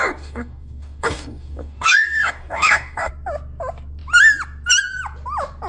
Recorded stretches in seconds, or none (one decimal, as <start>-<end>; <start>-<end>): 3.1-5.7